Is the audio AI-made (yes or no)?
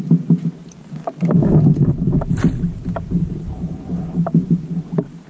no